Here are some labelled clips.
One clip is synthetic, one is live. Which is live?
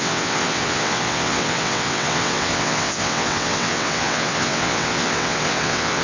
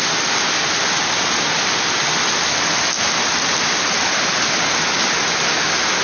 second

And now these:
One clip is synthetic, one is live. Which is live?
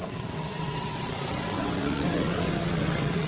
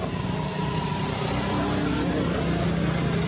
second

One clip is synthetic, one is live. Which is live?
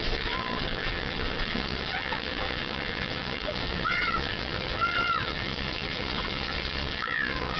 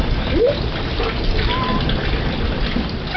second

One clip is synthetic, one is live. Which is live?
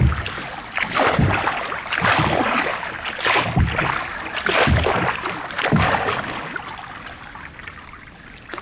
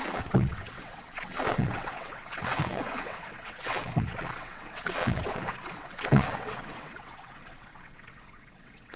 first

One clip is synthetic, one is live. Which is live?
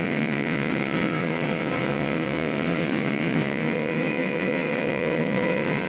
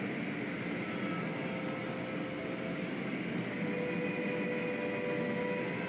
second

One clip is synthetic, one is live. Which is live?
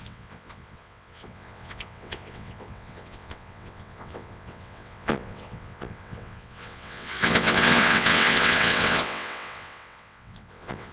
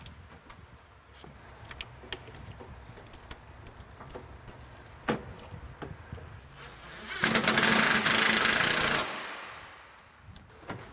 second